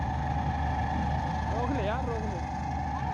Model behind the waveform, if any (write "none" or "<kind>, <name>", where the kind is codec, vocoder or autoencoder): none